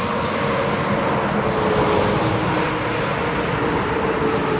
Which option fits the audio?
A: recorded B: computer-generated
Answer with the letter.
A